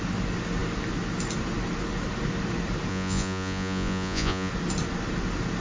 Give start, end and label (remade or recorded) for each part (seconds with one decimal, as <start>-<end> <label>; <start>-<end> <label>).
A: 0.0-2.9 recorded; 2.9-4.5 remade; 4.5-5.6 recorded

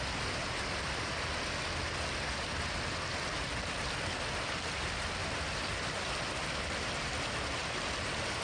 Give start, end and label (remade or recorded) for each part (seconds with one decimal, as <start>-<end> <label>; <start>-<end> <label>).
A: 0.0-5.2 recorded; 5.2-6.0 remade; 6.0-7.6 recorded; 7.6-8.4 remade

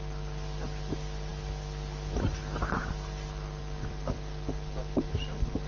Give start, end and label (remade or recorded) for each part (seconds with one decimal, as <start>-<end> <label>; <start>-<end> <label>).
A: 0.0-5.7 recorded